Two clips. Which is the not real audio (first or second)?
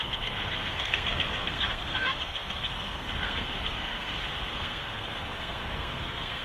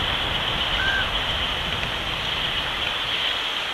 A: first